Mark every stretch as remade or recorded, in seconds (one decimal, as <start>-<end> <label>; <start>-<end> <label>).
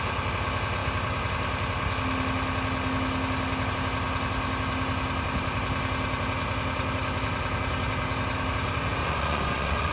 0.0-9.0 recorded; 9.0-9.9 remade